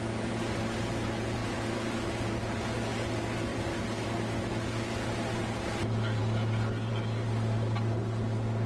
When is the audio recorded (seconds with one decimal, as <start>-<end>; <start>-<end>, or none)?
0.0-1.4; 2.0-3.5; 4.5-8.7